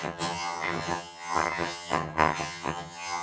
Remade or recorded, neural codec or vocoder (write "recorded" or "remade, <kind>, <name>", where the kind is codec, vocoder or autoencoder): remade, vocoder, HiFi-GAN